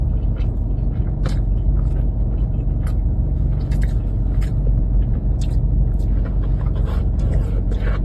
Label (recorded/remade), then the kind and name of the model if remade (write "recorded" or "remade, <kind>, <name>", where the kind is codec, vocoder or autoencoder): recorded